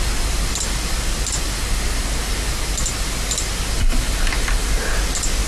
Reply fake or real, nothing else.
real